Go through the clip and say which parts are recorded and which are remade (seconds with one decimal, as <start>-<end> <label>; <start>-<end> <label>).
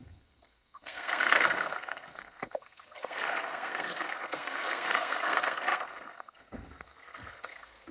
0.0-7.9 remade